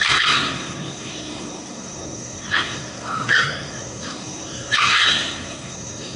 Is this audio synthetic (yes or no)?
yes